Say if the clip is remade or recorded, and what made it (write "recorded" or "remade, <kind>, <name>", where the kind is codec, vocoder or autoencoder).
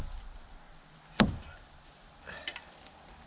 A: recorded